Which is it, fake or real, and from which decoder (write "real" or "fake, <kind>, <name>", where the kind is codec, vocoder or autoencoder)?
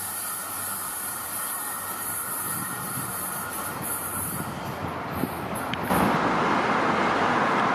real